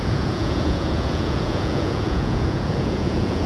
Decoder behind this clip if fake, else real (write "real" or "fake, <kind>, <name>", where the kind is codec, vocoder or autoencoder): fake, vocoder, Vocos